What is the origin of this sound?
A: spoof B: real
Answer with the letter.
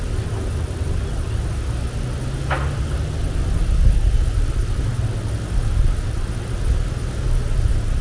B